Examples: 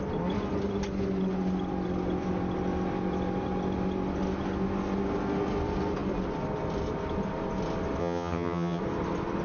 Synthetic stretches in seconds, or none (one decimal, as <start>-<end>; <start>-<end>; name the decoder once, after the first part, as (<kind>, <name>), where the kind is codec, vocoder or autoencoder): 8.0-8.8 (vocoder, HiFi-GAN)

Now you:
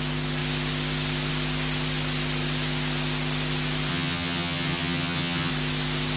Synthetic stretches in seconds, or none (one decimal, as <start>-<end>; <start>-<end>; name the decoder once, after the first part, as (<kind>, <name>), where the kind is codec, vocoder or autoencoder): 3.9-5.5 (vocoder, HiFi-GAN)

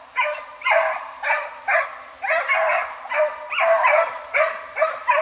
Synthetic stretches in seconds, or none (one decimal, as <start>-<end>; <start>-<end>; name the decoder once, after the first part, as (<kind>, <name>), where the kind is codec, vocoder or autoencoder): none

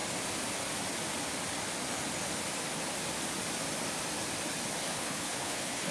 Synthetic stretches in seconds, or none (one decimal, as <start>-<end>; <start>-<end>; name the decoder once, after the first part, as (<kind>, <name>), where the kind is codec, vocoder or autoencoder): 4.9-5.9 (codec, HILCodec)

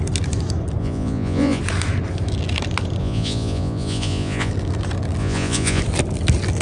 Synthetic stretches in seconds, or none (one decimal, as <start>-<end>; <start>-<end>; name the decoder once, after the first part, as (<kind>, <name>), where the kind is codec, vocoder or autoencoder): 0.8-1.6 (vocoder, Vocos); 3.0-4.5; 5.2-5.8